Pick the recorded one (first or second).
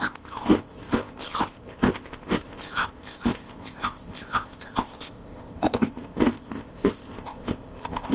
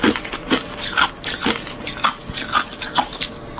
second